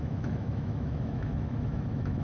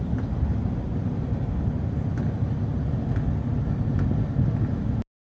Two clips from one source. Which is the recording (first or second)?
second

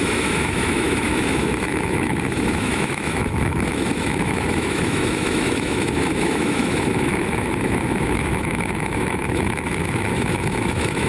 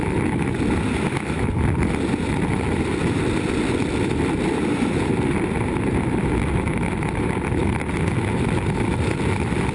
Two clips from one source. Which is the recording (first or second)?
second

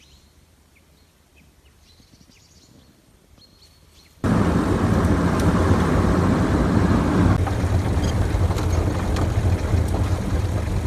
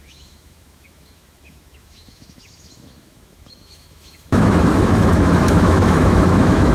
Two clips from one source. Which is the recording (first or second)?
first